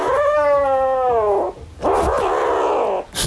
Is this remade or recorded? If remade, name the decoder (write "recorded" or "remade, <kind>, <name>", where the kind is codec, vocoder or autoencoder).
recorded